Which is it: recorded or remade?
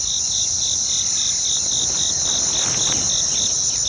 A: recorded